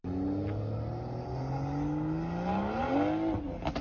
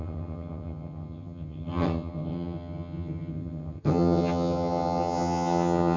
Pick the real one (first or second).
first